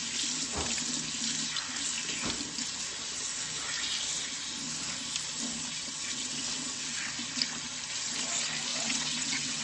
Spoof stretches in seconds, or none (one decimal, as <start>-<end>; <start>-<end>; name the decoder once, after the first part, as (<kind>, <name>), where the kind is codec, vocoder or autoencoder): 5.7-7.1 (vocoder, WaveNeXt); 8.7-9.6